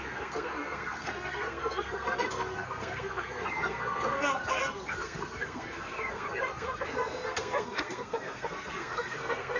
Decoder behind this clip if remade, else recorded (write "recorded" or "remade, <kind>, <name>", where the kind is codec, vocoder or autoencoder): remade, codec, SNAC